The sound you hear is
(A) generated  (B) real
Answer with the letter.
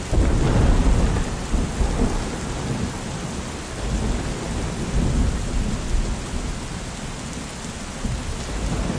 B